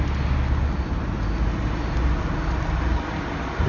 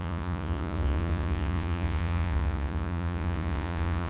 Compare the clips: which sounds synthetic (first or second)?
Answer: second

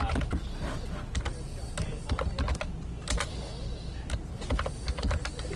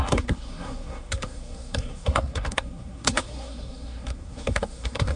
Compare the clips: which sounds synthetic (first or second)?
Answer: second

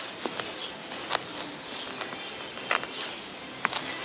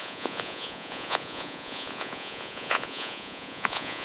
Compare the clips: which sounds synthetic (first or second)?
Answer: second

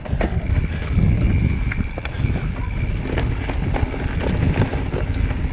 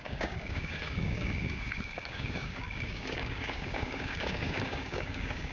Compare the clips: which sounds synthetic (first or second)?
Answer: second